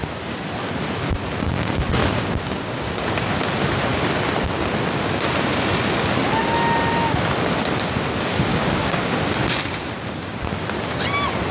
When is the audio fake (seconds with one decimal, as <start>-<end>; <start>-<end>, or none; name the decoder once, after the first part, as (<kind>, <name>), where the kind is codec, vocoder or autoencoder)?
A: 2.0-3.0 (codec, DAC); 8.5-9.1

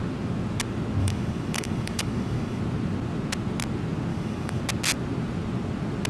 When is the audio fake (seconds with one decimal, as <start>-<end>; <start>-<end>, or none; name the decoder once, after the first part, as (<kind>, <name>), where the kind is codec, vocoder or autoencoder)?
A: 1.0-2.6 (codec, DAC); 4.1-4.6